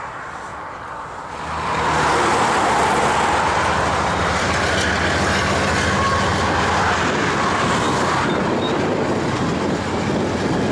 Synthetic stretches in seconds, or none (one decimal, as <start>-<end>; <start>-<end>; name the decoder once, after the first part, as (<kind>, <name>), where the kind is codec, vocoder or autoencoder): 0.5-4.6 (vocoder, BigVGAN v2)

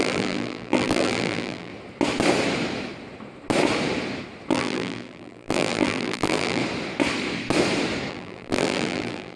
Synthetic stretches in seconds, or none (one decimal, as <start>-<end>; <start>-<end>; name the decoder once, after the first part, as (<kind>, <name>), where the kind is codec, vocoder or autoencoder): 0.0-1.7 (vocoder, BigVGAN v2); 4.5-6.6; 8.1-9.4

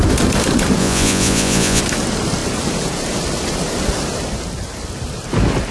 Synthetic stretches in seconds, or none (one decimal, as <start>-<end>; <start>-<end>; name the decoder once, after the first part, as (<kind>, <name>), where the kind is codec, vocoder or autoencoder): 0.8-1.8 (vocoder, Vocos)

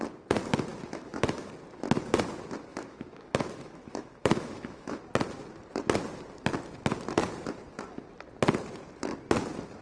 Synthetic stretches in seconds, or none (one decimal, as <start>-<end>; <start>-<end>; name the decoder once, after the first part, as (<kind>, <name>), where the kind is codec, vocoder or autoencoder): 0.7-1.5 (autoencoder, DAC-VAE); 2.7-5.0